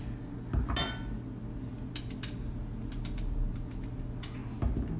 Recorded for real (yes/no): yes